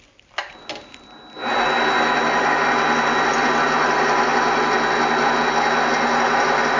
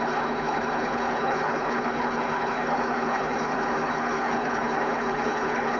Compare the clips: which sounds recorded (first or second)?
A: first